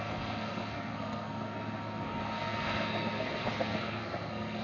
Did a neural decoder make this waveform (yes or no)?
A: yes